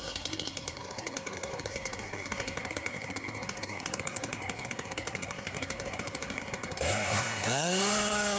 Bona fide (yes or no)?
no